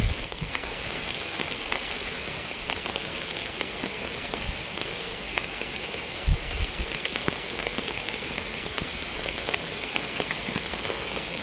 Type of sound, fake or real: fake